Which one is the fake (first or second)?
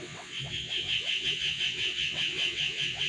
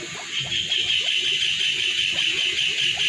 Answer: first